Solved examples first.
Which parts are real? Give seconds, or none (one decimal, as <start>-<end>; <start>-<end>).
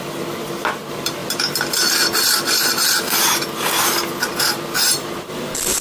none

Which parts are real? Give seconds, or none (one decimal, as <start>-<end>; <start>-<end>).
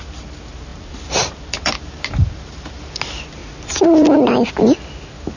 0.0-0.7; 2.9-3.4; 4.5-5.4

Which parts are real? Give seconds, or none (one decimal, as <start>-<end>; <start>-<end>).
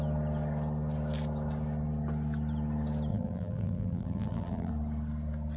0.0-3.1; 4.7-5.6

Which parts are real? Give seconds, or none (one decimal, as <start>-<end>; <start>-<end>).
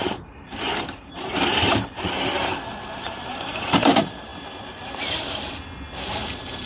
4.3-6.7